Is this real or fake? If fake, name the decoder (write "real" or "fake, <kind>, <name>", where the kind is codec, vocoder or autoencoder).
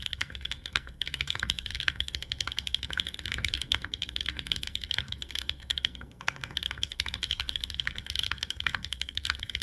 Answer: fake, codec, SNAC